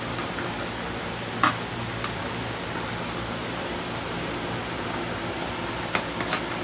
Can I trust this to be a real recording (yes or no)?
yes